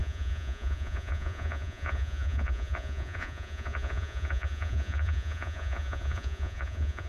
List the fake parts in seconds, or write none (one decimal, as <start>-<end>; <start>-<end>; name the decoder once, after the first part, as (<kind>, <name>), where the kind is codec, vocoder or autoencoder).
0.0-7.1 (vocoder, Vocos)